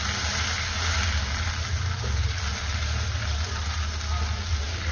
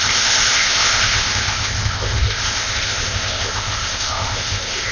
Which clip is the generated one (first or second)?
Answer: second